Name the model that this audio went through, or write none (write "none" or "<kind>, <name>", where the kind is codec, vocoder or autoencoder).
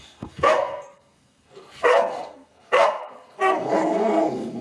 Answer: codec, SNAC